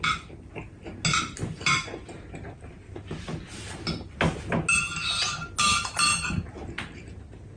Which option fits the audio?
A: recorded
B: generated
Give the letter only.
A